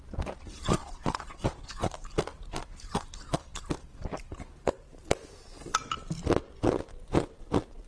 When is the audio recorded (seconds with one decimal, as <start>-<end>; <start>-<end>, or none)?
0.0-0.8; 1.7-7.9